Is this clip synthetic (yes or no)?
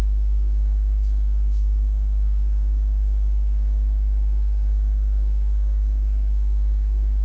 yes